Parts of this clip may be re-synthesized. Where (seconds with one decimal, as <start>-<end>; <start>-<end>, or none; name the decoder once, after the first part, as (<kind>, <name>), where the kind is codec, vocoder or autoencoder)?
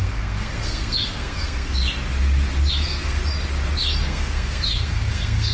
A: 0.0-1.8 (codec, SNAC); 2.7-3.2; 4.0-5.5